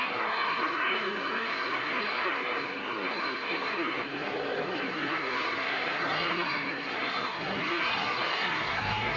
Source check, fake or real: fake